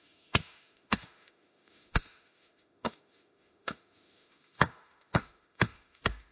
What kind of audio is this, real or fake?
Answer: fake